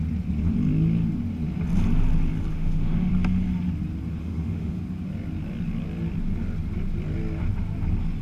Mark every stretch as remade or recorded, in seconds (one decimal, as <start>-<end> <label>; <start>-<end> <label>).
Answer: 0.0-2.5 recorded; 2.5-3.1 remade; 3.1-4.2 recorded; 4.2-4.8 remade; 4.8-8.2 recorded